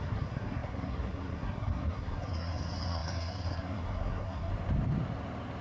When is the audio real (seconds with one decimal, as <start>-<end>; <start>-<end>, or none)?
4.5-5.6